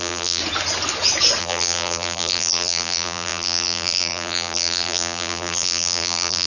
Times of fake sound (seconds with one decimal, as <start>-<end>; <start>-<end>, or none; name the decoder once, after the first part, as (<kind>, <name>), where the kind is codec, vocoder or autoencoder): 0.0-0.4 (vocoder, BigVGAN v2); 1.4-6.5